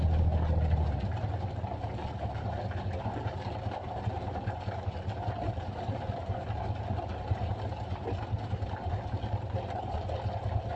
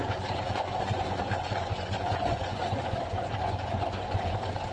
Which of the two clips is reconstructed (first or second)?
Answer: second